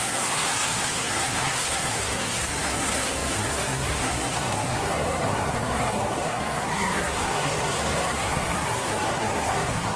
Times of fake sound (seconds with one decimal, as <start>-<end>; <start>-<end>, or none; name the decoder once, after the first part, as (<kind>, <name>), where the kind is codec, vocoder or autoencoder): 0.0-10.0 (codec, SNAC)